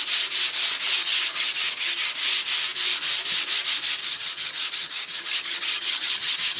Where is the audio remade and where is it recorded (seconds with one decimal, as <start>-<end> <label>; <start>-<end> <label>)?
0.0-1.0 recorded; 1.0-2.1 remade; 2.1-4.0 recorded; 4.0-6.6 remade